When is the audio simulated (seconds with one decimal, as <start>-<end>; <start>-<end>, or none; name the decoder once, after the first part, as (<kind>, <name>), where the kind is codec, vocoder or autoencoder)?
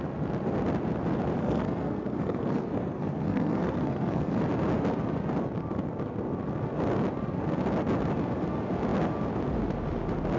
1.4-4.4 (codec, SNAC)